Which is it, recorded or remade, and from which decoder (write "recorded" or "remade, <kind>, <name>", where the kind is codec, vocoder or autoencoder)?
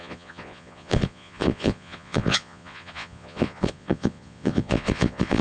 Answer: remade, vocoder, Vocos